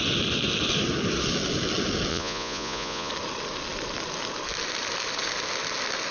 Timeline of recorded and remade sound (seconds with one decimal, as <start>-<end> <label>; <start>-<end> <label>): 0.0-2.1 recorded; 2.1-3.1 remade; 3.1-6.1 recorded